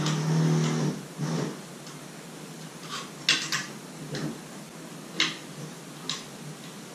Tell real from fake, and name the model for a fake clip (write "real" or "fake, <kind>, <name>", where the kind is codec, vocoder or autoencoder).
real